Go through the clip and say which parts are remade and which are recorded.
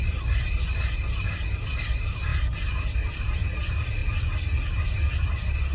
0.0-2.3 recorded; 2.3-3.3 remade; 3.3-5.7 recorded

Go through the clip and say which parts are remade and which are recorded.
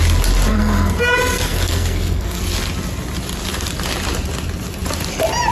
0.0-0.5 recorded; 0.5-2.4 remade; 2.4-5.5 recorded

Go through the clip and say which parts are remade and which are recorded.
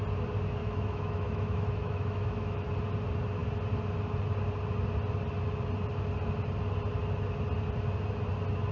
0.0-0.6 recorded; 0.6-2.7 remade; 2.7-8.7 recorded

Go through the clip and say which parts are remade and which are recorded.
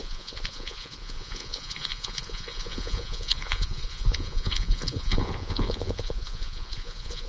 0.0-7.3 remade